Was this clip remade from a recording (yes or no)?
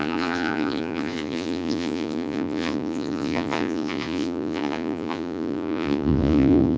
yes